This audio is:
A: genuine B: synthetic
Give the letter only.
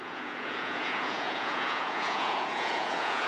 B